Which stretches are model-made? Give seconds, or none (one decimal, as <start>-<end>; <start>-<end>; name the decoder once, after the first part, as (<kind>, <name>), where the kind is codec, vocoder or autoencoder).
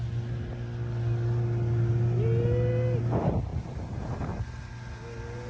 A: none